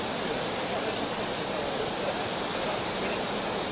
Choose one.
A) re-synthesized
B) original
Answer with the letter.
B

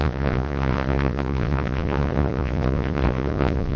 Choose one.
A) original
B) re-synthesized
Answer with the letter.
B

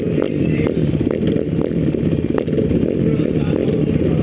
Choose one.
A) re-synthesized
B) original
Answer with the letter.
B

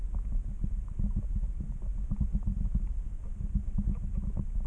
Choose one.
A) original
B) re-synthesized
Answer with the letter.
A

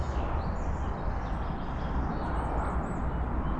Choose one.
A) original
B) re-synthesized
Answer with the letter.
A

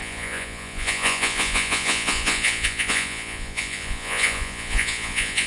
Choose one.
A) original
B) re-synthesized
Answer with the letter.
B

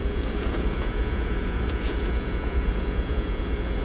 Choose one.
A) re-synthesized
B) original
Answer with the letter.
A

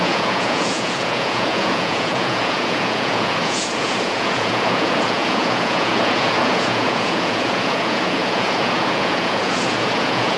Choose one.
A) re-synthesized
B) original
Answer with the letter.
A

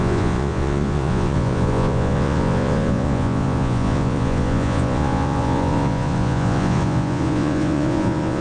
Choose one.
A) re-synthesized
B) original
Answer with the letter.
A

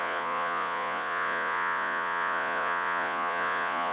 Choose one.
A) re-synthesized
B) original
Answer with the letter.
A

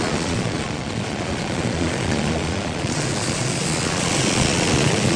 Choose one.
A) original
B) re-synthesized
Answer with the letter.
B